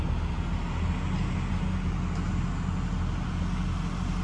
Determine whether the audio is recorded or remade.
recorded